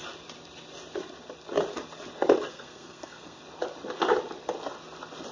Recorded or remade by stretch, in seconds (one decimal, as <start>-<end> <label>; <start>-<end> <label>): 0.0-2.5 recorded; 2.5-3.4 remade; 3.4-5.3 recorded